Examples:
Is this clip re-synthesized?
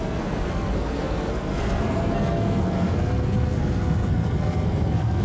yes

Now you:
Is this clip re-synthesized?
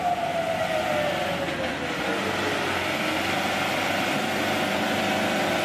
no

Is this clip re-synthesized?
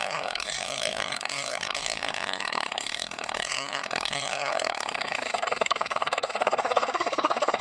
yes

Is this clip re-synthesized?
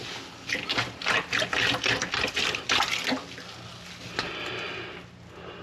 no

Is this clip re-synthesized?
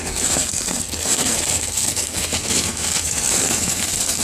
yes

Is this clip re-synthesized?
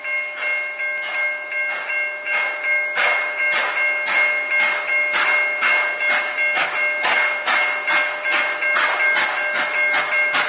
no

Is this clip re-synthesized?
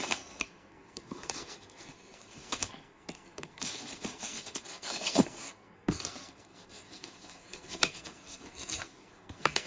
yes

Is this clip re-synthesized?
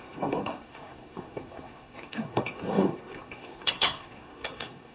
yes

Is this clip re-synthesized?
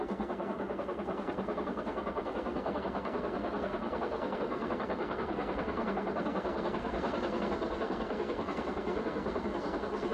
yes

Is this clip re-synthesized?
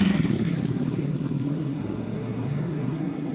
yes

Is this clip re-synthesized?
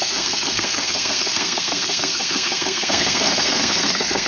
yes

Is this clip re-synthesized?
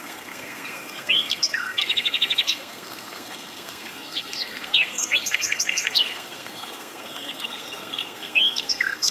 yes